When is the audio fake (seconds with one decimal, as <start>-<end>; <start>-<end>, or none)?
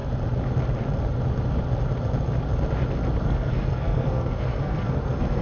3.2-5.4